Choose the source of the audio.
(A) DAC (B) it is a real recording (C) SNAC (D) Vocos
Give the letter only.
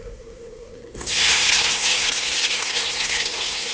C